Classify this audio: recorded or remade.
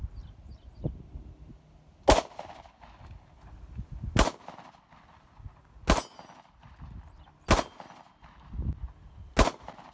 recorded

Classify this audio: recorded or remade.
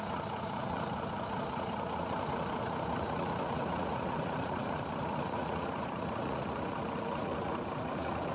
remade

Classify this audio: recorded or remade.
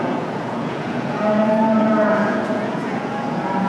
remade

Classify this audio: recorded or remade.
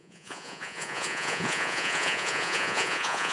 remade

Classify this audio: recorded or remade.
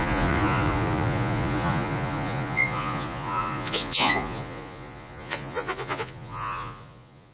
remade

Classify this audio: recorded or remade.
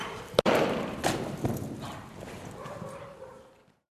recorded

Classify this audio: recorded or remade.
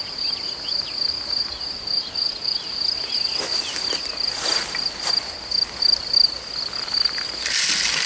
recorded